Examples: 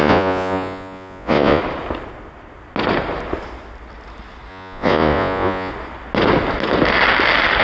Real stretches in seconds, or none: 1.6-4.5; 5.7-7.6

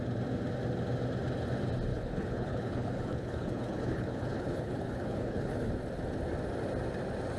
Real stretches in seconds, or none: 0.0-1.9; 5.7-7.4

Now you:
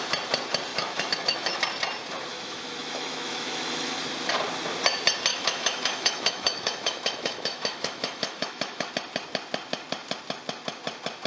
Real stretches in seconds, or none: 0.0-0.7; 1.6-2.3; 4.0-5.3; 8.9-11.3

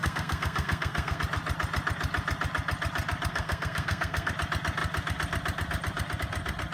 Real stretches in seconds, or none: 1.2-3.3; 4.3-6.7

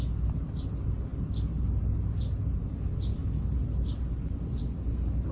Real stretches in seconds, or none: 0.0-5.3